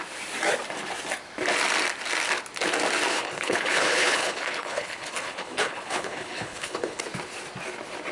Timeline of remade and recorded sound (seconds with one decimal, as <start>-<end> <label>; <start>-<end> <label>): 0.0-3.1 recorded; 3.1-7.0 remade; 7.0-8.1 recorded